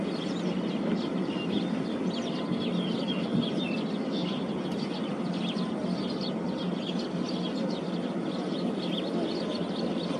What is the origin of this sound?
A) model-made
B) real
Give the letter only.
B